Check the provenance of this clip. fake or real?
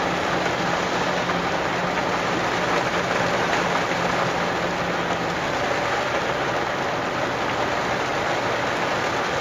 real